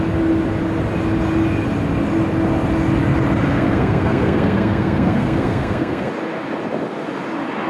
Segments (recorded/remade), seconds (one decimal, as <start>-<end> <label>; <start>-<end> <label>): 0.0-3.5 recorded; 3.5-6.1 remade; 6.1-7.7 recorded